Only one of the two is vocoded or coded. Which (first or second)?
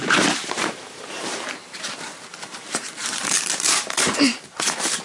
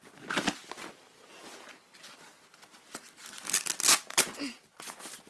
first